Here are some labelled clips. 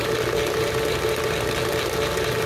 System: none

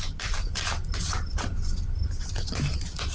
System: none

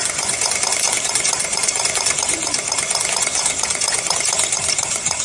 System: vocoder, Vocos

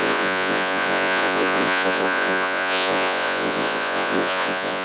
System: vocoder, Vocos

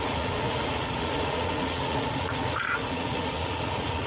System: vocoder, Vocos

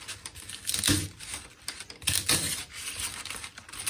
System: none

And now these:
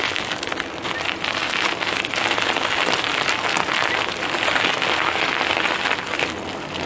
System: none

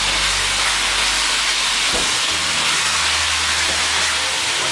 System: none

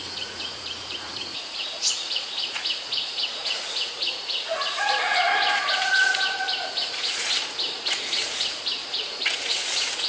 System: vocoder, Vocos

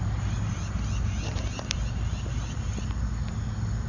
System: none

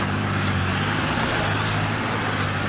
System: none